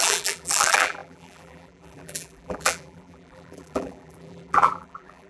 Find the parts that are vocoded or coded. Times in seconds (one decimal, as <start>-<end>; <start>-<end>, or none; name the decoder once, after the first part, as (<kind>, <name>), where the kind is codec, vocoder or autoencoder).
0.0-5.3 (vocoder, BigVGAN v2)